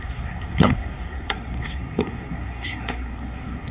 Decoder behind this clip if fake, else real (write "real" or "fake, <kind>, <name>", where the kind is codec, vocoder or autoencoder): fake, codec, SNAC